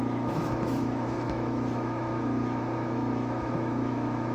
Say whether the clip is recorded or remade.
remade